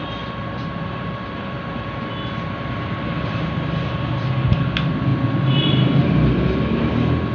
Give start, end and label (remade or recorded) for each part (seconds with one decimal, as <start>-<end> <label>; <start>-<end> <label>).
0.0-7.3 recorded